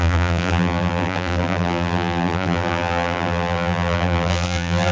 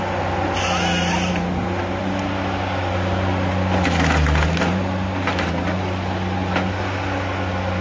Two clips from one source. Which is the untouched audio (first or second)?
second